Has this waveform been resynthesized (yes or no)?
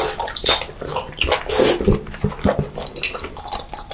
no